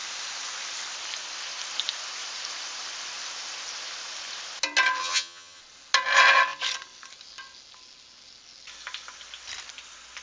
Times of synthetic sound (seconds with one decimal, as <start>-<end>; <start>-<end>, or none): 5.0-5.6